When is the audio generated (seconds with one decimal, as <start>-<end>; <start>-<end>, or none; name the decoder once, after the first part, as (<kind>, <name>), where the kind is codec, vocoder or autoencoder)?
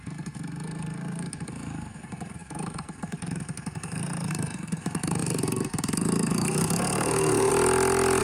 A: 0.0-7.5 (codec, SNAC)